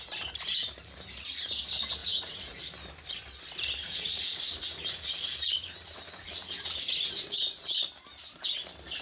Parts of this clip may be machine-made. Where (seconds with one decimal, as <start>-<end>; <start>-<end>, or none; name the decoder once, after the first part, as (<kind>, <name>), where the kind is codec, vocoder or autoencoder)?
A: 2.0-2.6 (vocoder, Vocos); 3.8-6.9